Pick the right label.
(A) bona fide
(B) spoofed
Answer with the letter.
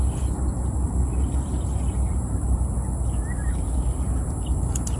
A